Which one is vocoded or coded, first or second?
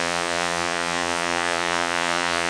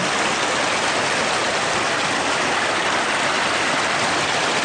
first